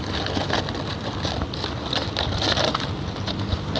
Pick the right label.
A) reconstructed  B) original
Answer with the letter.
B